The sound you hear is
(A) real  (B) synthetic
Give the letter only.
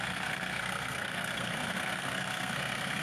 B